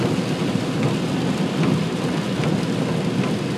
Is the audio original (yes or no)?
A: yes